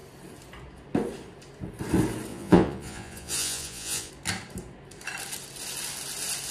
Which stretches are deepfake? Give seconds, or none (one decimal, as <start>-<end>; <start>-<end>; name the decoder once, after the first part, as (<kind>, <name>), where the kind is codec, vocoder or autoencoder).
2.3-4.1 (vocoder, Vocos)